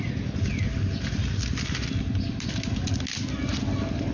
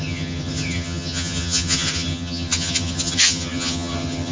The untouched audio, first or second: first